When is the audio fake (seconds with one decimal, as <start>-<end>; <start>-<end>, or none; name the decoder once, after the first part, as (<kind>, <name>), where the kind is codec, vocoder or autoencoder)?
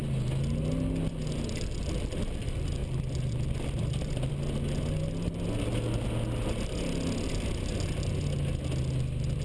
2.8-4.3 (vocoder, BigVGAN v2)